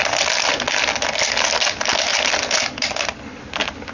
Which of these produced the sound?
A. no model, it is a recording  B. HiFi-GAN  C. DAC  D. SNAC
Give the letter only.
A